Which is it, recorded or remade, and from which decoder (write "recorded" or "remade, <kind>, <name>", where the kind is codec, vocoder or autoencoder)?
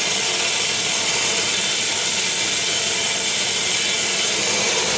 recorded